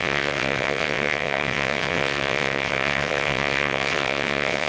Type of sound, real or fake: fake